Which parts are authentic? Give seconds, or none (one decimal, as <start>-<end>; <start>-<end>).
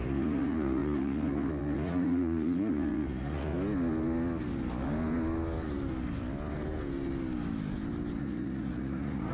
3.5-8.2